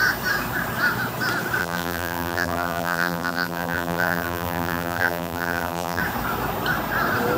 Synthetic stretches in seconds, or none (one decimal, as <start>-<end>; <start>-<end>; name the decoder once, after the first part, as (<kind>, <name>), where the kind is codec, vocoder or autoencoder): 1.6-6.0 (vocoder, BigVGAN v2)